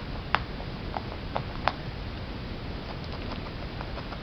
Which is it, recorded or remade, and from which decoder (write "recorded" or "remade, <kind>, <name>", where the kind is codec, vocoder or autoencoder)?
recorded